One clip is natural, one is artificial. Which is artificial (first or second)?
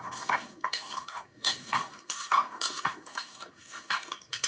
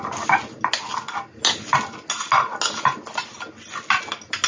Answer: first